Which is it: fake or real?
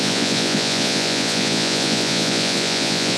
fake